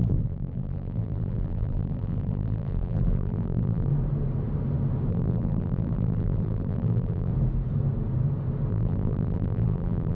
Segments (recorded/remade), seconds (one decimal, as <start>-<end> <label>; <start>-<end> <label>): 0.0-3.9 remade; 3.9-5.1 recorded; 5.1-7.3 remade; 7.3-8.7 recorded; 8.7-10.1 remade